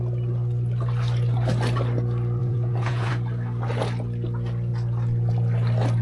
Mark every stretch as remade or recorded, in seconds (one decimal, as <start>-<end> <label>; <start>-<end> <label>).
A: 0.0-2.4 recorded; 2.4-3.1 remade; 3.1-6.0 recorded